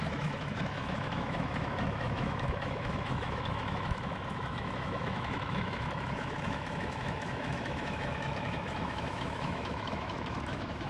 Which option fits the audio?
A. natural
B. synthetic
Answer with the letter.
B